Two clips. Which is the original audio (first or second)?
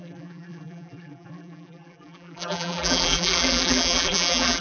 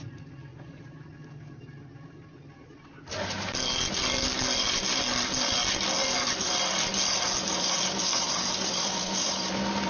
second